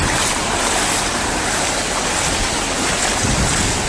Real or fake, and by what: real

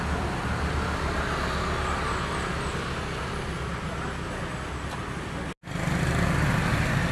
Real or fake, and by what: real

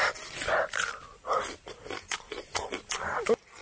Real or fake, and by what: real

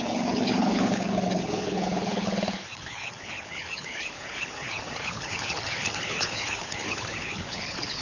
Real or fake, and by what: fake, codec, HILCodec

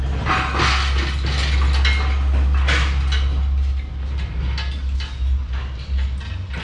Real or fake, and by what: real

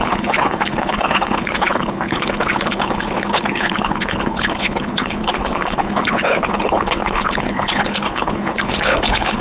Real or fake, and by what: fake, codec, HILCodec